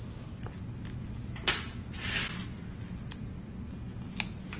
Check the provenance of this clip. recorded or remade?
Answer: recorded